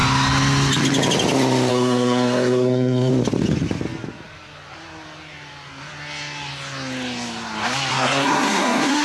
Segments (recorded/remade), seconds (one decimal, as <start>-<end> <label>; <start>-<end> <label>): 0.0-1.7 recorded; 1.7-3.1 remade; 3.1-7.9 recorded; 7.9-9.0 remade